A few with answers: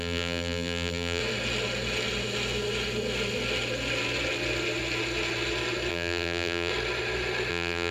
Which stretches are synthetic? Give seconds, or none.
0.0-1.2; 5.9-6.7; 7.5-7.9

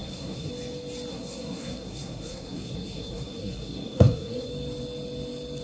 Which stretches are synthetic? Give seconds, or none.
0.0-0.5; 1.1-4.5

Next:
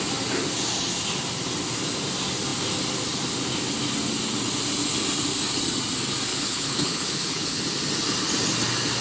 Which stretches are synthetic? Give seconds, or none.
6.3-7.6

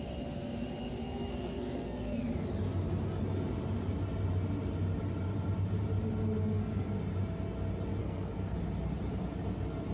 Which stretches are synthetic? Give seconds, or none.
1.0-2.2; 6.4-7.0; 8.0-8.6

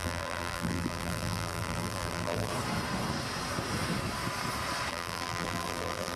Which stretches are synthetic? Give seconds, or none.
0.0-2.5; 4.9-6.2

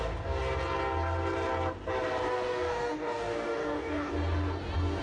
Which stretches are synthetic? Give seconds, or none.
2.3-4.1

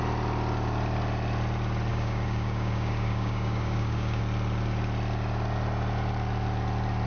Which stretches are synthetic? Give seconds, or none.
1.9-4.2

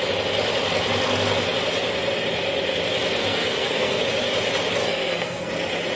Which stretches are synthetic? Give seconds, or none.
3.2-4.0; 4.8-5.5